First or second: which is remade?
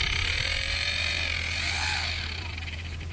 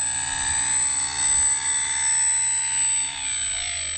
first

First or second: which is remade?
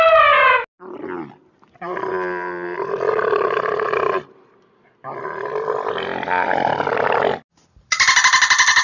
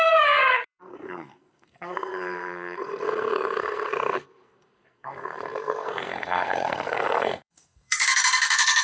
second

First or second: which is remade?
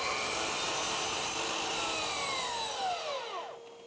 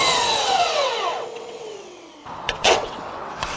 second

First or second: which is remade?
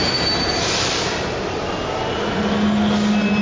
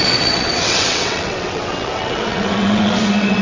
second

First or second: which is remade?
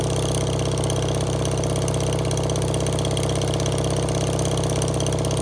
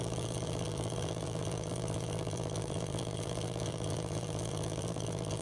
second